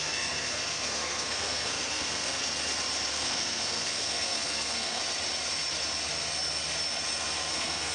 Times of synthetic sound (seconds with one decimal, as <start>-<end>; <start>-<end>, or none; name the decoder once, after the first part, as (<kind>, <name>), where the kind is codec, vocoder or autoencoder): 0.0-2.4 (codec, SNAC); 3.1-5.0; 7.5-7.9